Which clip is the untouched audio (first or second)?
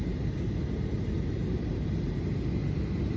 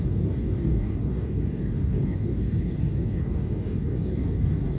first